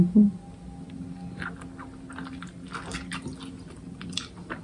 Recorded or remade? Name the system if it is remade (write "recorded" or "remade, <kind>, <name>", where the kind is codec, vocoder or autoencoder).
recorded